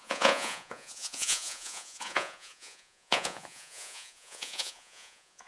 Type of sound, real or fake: fake